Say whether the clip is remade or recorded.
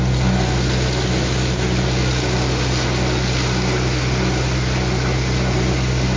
recorded